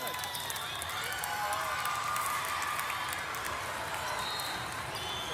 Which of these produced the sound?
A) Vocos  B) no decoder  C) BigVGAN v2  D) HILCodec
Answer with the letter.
B